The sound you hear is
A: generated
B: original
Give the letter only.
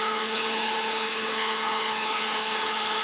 A